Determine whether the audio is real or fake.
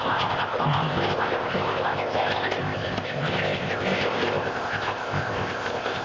fake